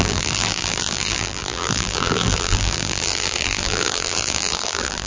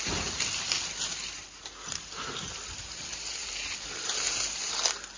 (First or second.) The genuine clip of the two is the second